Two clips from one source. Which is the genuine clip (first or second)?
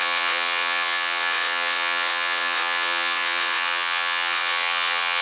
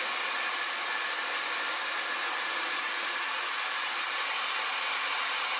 second